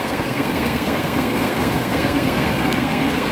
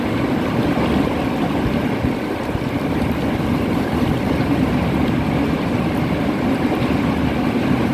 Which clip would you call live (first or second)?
second